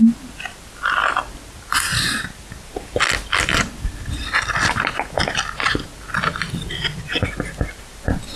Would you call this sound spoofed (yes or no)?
no